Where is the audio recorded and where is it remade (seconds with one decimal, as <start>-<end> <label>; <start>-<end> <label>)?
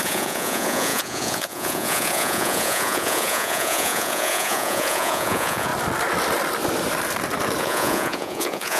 0.0-5.7 remade; 5.7-7.6 recorded; 7.6-8.8 remade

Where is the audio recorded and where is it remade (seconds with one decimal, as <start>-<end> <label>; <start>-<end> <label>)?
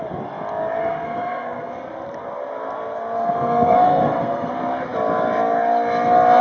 0.0-0.8 recorded; 0.8-1.7 remade; 1.7-3.2 recorded; 3.2-4.5 remade; 4.5-6.4 recorded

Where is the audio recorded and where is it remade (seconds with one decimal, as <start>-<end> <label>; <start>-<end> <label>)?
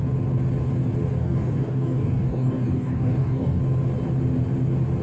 0.0-1.2 recorded; 1.2-3.6 remade; 3.6-5.0 recorded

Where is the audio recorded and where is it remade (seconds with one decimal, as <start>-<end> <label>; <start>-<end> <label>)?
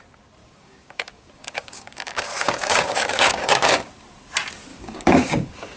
0.0-0.4 recorded; 0.4-3.9 remade; 3.9-4.7 recorded; 4.7-5.8 remade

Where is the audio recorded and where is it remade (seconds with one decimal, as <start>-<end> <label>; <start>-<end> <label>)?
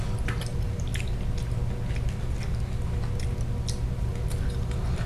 0.0-0.9 remade; 0.9-4.0 recorded; 4.0-5.1 remade